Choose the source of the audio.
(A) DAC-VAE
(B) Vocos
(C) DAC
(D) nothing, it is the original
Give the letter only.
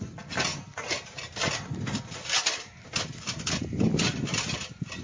D